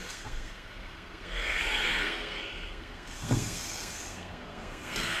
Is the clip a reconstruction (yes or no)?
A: yes